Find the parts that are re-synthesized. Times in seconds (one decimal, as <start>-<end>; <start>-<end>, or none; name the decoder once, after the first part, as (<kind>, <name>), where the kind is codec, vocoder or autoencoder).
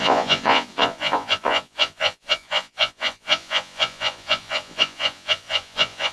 0.0-6.1 (vocoder, Vocos)